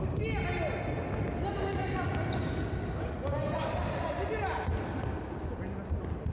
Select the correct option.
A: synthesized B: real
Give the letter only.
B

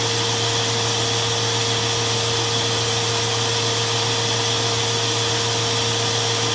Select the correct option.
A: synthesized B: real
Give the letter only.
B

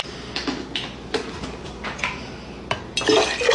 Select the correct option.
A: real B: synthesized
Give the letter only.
A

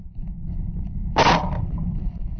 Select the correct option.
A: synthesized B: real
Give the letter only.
B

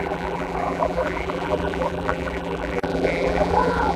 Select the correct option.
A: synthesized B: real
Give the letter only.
A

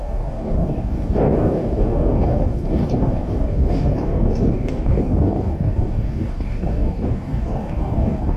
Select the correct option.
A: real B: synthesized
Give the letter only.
B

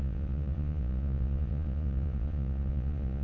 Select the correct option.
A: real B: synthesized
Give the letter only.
B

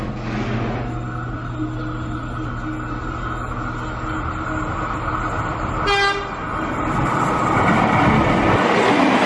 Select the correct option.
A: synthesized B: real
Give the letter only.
B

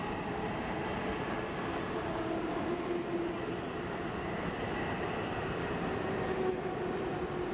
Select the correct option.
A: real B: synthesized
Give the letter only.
A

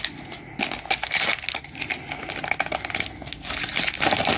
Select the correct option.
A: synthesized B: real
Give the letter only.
B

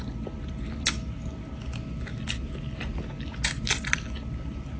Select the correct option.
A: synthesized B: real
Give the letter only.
B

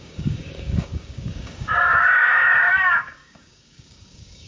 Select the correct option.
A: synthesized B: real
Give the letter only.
A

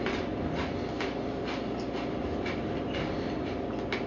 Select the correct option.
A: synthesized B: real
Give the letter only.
B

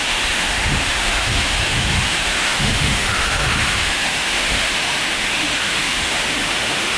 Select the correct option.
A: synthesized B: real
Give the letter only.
A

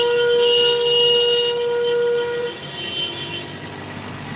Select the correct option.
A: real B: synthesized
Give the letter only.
A